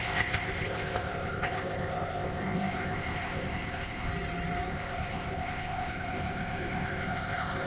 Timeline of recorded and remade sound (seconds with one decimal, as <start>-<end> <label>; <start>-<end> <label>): 0.0-4.1 remade; 4.1-4.7 recorded; 4.7-7.7 remade